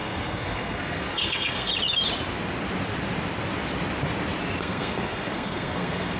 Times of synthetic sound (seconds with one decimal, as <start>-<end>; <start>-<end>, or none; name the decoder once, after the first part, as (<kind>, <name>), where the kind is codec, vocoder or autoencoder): 0.0-1.7 (codec, SNAC); 4.6-6.2

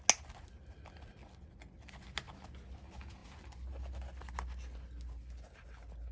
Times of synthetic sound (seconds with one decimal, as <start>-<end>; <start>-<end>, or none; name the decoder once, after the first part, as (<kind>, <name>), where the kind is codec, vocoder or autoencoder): none

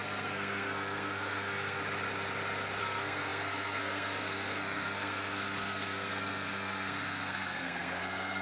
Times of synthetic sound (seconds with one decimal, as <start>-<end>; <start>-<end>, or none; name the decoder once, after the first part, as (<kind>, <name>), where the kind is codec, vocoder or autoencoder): 0.0-1.8 (codec, SNAC); 2.8-8.4

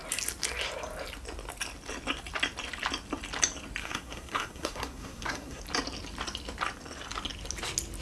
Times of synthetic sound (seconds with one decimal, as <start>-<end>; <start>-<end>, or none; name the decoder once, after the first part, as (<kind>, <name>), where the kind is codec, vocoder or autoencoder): 3.8-5.6 (codec, SNAC)

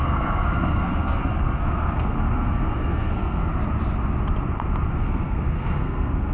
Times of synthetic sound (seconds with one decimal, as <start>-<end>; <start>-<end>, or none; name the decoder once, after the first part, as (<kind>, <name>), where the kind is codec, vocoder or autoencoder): 0.0-3.4 (codec, SNAC); 5.0-6.3